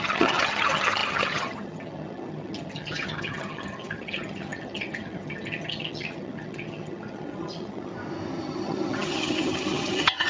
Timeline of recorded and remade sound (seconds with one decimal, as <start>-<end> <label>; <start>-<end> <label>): 0.0-7.9 remade; 7.9-8.4 recorded; 8.4-10.3 remade